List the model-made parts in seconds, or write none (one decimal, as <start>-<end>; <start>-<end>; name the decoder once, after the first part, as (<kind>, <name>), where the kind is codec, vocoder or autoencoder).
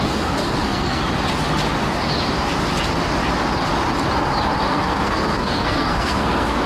0.0-1.0 (codec, SNAC); 4.7-6.7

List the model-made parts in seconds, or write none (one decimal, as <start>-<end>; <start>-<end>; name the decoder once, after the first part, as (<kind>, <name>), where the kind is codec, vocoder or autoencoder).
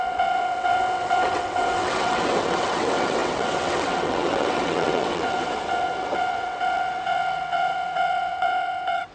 0.0-9.1 (vocoder, WaveNeXt)